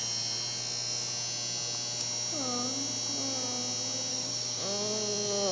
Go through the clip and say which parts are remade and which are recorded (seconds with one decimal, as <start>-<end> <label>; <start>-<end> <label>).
0.0-4.1 recorded; 4.1-4.6 remade; 4.6-5.5 recorded